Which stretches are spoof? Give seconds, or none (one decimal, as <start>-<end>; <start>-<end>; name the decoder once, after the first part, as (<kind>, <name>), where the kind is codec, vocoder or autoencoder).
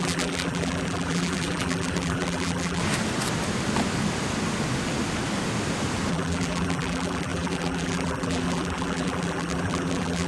0.0-2.8 (vocoder, BigVGAN v2); 6.1-10.3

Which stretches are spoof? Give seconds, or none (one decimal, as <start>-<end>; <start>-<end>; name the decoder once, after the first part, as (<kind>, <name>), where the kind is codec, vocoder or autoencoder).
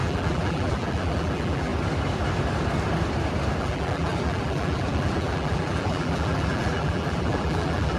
0.0-1.7 (vocoder, BigVGAN v2); 3.6-8.0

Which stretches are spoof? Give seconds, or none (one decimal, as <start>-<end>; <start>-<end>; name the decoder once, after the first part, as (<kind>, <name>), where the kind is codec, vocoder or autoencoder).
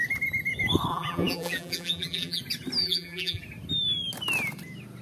0.9-2.4 (vocoder, BigVGAN v2); 2.8-3.4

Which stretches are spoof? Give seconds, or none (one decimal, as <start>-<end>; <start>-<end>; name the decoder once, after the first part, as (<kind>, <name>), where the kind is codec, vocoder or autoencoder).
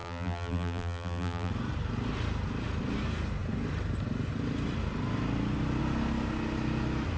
0.0-1.5 (vocoder, BigVGAN v2)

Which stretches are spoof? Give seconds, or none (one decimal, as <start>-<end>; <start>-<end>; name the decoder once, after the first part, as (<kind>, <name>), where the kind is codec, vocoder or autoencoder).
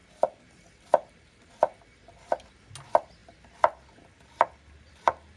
0.0-2.7 (vocoder, BigVGAN v2); 3.2-4.9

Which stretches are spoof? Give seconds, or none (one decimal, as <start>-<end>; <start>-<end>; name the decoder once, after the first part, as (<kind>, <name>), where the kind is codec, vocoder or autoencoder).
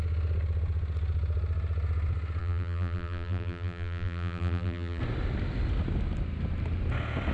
2.4-5.0 (vocoder, BigVGAN v2)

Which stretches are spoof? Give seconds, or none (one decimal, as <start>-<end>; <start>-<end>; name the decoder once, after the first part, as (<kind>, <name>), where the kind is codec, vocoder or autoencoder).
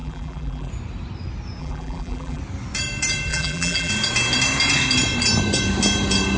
0.0-0.7 (vocoder, BigVGAN v2); 1.6-2.4; 3.3-3.9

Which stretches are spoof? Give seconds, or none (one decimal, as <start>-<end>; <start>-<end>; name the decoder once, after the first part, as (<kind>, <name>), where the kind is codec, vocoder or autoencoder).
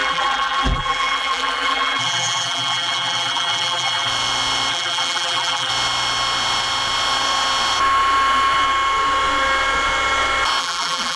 0.0-4.1 (vocoder, BigVGAN v2); 4.7-5.7; 10.6-11.2